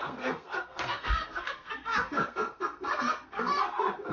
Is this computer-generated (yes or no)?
yes